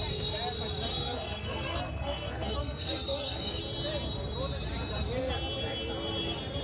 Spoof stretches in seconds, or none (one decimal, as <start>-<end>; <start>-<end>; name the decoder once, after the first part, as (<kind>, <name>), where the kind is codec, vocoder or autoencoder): 0.9-3.6 (codec, SNAC)